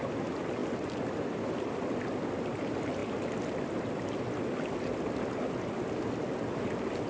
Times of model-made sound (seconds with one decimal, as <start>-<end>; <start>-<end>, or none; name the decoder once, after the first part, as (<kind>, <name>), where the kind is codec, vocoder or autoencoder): none